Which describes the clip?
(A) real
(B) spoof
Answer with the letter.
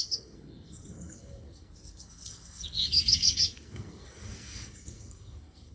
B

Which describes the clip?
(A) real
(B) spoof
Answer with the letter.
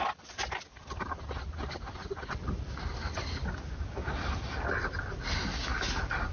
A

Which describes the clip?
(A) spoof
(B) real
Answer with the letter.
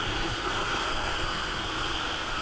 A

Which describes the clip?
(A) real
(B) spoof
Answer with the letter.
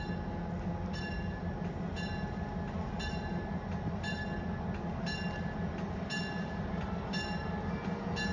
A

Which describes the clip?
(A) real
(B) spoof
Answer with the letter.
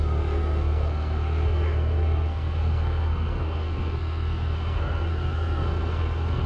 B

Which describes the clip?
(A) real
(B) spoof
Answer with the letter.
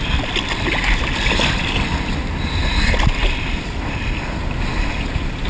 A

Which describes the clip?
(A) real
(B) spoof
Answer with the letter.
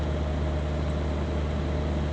A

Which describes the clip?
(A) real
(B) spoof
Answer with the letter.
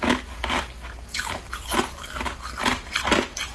A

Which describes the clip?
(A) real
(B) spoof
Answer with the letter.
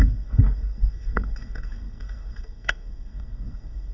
B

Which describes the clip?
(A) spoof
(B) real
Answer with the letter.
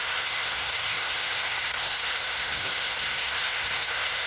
A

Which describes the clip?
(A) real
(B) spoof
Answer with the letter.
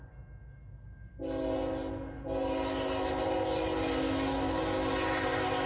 A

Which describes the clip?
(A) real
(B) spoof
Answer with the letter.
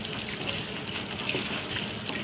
A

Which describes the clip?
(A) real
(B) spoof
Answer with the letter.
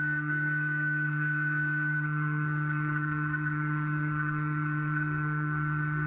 B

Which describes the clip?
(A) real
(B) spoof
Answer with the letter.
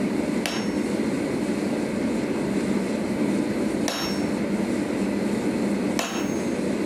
A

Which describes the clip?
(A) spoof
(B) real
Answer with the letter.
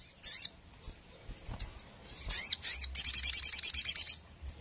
B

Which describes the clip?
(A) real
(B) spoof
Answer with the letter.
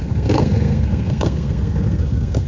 B